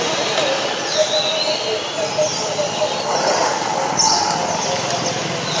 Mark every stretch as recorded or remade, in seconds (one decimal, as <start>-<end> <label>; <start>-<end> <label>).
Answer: 0.0-5.6 recorded